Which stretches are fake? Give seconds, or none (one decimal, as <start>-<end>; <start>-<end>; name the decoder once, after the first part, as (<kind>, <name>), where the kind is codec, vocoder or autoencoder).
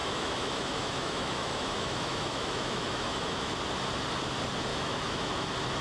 0.0-3.5 (autoencoder, DAC-VAE); 4.7-5.3